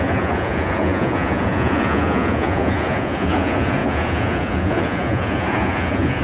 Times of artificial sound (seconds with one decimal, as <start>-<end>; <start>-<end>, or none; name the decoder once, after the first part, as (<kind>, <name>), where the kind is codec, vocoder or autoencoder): 0.0-6.2 (vocoder, Vocos)